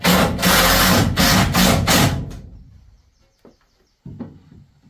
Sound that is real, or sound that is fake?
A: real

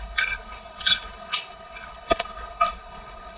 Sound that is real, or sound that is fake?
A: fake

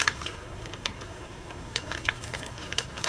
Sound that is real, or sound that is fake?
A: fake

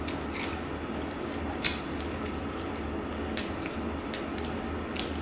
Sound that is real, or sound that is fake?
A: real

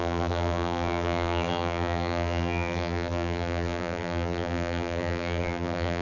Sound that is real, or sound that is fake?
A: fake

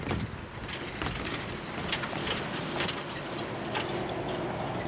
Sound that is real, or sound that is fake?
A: real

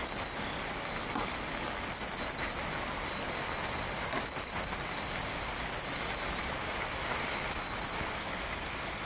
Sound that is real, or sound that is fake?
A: real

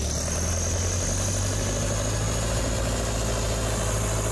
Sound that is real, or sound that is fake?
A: real